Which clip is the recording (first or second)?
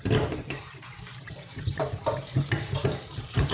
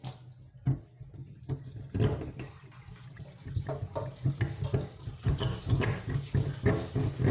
second